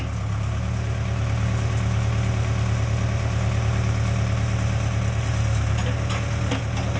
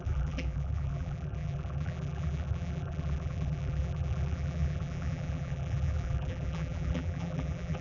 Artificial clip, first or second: second